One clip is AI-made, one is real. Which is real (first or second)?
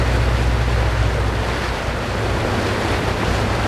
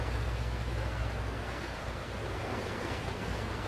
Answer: first